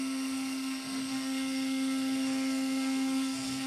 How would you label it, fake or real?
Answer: fake